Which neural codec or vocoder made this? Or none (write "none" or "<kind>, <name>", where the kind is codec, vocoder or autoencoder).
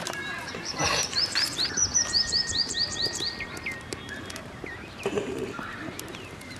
vocoder, BigVGAN v2